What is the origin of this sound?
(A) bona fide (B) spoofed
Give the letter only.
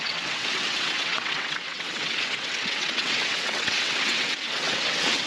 B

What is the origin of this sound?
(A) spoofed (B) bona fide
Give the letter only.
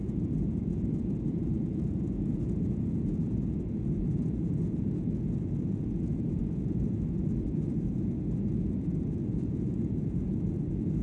A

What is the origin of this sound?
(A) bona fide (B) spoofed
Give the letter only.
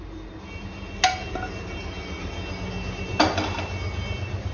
A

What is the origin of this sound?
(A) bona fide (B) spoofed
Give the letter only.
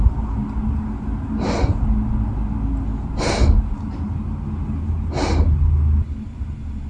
A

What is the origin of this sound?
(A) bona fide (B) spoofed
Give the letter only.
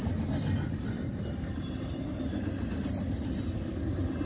A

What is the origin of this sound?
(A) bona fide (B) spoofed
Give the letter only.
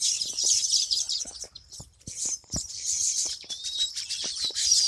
B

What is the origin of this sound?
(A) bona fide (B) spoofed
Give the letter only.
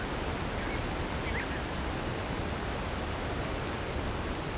A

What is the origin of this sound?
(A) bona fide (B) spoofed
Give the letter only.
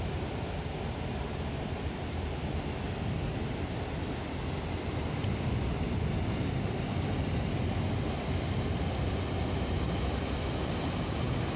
A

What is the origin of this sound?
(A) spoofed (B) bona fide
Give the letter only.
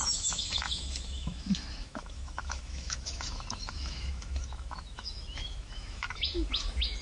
A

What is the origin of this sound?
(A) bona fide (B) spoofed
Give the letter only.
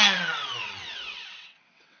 B